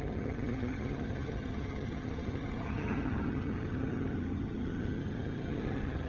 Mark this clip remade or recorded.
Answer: remade